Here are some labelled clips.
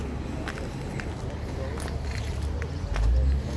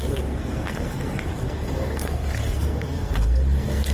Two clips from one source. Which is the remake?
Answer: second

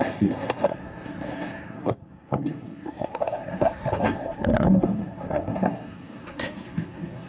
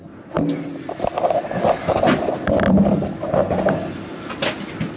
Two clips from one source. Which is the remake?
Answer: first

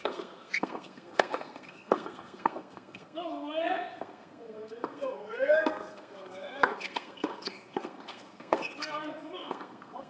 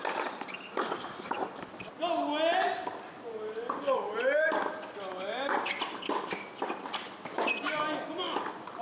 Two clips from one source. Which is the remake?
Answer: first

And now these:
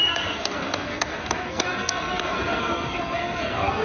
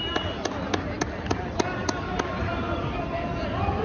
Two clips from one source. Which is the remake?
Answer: first